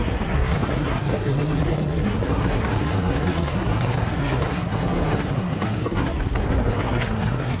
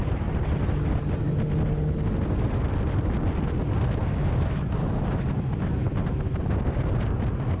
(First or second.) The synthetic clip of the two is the first